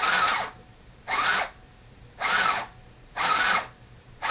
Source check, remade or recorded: remade